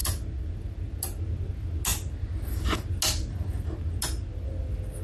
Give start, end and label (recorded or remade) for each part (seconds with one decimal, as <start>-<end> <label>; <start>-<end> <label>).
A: 0.0-5.0 recorded